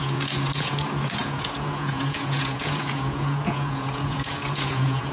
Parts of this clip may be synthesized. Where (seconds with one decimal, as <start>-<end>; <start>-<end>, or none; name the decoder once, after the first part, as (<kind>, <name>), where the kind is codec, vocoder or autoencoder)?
0.0-5.1 (vocoder, Vocos)